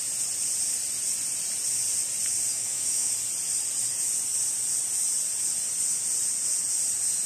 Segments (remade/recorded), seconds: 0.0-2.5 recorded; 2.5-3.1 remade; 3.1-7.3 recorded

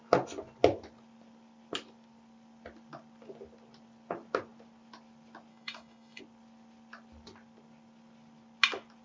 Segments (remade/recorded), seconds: 0.0-5.5 recorded; 5.5-6.2 remade; 6.2-9.0 recorded

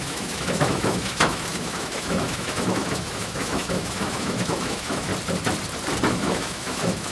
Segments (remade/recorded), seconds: 0.0-5.1 remade; 5.1-6.1 recorded; 6.1-7.1 remade

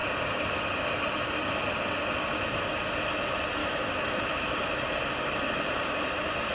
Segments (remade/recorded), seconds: 0.0-3.6 recorded; 3.6-4.5 remade; 4.5-6.5 recorded